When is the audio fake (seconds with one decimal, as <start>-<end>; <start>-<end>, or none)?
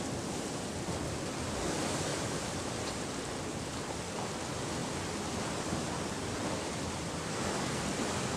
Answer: 7.3-7.8